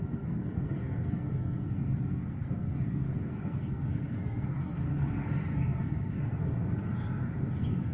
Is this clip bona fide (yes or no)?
no